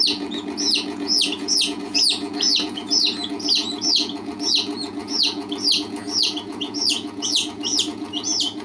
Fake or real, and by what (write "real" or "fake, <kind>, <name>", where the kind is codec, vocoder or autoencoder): fake, vocoder, Vocos